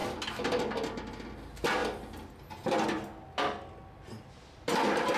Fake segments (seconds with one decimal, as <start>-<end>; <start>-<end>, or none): none